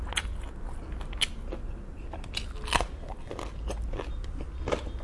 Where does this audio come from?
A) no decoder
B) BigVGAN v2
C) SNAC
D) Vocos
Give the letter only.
A